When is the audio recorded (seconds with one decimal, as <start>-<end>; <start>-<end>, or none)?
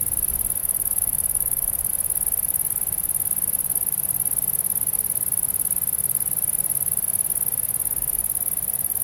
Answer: 0.0-0.6; 1.9-9.0